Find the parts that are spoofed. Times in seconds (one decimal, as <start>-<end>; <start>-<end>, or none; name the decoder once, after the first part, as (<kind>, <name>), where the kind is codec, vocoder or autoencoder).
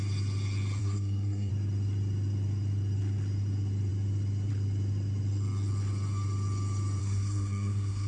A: 0.8-1.5 (codec, SNAC); 7.0-8.1